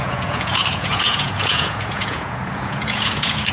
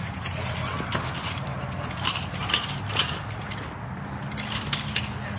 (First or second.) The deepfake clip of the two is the first